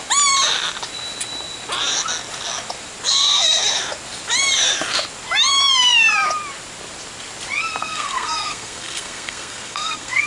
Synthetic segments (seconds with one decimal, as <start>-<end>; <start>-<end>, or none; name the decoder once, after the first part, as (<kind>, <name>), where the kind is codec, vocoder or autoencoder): 7.8-10.3 (codec, SNAC)